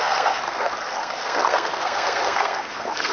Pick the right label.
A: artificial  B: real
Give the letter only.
A